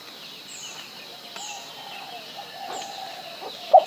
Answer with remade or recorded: recorded